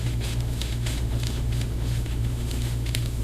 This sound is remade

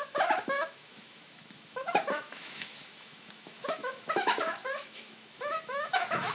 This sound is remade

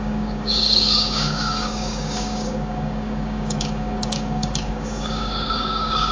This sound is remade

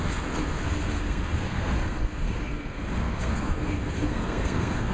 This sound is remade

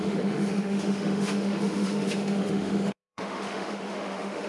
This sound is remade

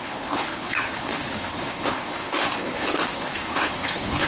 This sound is remade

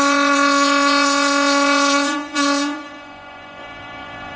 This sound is remade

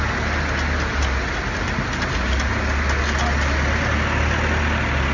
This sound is recorded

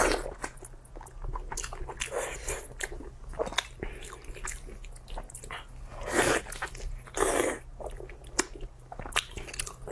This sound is recorded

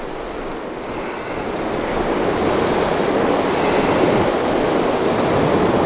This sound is recorded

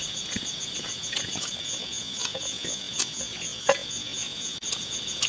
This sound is remade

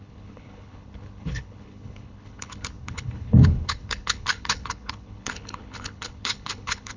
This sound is remade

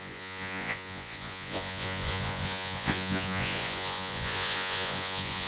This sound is remade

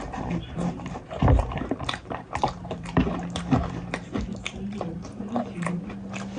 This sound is remade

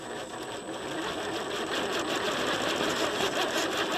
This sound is recorded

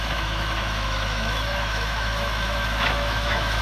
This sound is remade